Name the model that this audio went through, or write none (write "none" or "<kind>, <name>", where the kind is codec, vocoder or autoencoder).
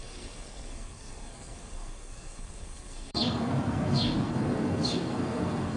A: codec, SNAC